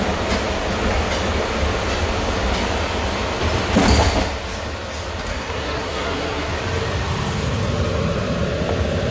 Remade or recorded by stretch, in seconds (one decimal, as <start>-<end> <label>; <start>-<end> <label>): 0.0-5.3 recorded; 5.3-6.5 remade; 6.5-9.1 recorded